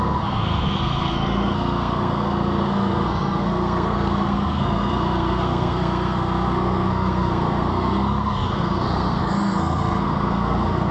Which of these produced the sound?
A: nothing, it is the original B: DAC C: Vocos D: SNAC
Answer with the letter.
D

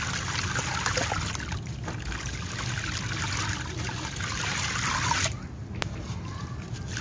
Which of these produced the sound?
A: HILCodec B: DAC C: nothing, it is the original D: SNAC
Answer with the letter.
C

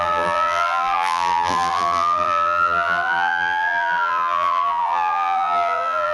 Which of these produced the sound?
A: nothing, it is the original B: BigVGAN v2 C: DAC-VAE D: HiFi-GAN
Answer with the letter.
B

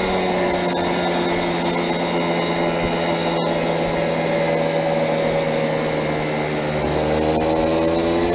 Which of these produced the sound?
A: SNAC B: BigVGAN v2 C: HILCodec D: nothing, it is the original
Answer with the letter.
D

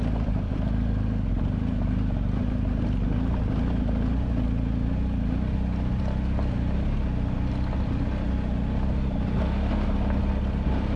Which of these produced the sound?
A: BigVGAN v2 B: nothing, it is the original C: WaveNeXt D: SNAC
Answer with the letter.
B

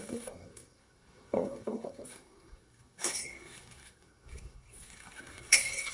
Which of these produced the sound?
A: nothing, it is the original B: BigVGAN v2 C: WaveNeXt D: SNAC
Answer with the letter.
D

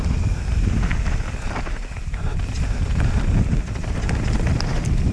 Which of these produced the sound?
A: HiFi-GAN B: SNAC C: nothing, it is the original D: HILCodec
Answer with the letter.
C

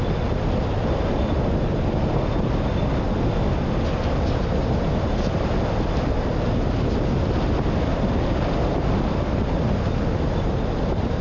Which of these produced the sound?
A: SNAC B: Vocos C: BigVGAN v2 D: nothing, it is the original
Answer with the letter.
D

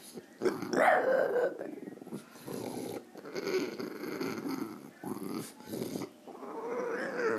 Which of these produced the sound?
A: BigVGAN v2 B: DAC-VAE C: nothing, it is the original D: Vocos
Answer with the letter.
C